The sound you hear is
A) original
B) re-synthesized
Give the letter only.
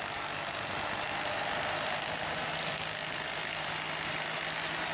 A